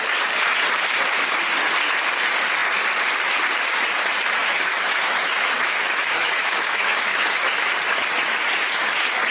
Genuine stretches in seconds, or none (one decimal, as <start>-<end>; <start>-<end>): 0.0-4.4; 7.7-9.3